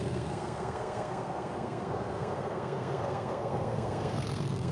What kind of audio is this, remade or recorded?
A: remade